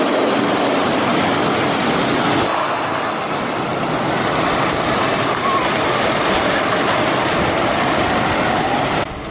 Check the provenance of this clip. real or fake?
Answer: real